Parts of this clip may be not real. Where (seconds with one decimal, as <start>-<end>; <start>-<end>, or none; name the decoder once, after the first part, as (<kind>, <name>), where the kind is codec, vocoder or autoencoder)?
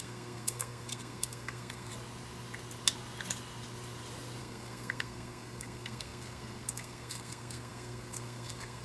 0.0-1.9 (codec, SNAC); 4.4-8.8